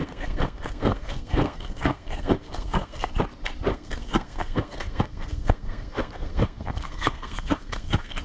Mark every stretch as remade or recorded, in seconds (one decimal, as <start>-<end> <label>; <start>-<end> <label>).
0.0-3.1 remade; 3.1-3.7 recorded; 3.7-8.2 remade